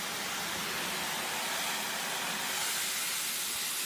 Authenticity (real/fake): real